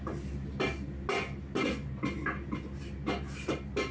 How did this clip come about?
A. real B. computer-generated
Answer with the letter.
A